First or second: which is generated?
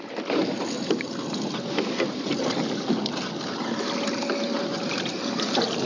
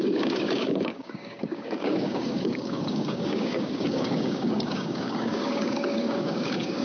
second